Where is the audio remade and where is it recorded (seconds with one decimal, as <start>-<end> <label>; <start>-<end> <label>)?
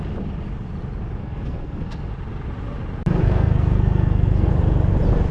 0.0-1.2 recorded; 1.2-2.1 remade; 2.1-3.2 recorded; 3.2-4.5 remade; 4.5-5.3 recorded